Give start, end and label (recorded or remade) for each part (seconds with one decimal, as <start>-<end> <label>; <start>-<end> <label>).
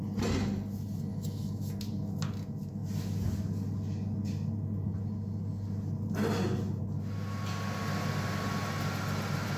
0.0-1.1 recorded; 1.1-1.8 remade; 1.8-9.6 recorded